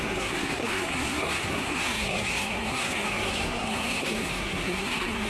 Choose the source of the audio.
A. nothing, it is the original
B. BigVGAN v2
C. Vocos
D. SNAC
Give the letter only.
D